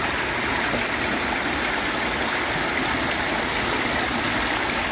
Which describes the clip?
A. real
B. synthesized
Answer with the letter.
A